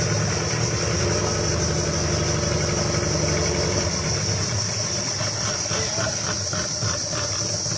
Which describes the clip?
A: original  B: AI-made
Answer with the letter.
A